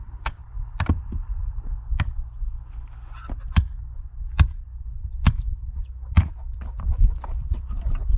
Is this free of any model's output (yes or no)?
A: yes